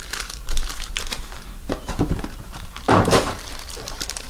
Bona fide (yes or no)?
no